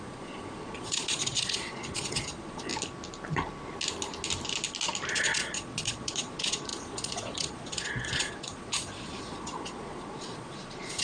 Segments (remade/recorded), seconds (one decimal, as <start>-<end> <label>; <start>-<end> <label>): 0.0-2.7 remade; 2.7-5.1 recorded; 5.1-11.0 remade